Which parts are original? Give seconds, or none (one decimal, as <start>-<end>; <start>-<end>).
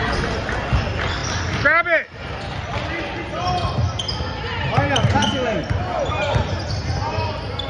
0.0-7.7